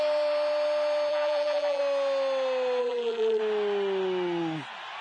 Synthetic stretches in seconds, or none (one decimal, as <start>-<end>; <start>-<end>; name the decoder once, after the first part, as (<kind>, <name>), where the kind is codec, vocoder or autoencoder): 1.1-1.8 (vocoder, BigVGAN v2); 2.8-3.4